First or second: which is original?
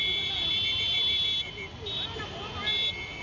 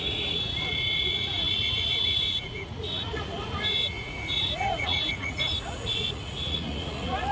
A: first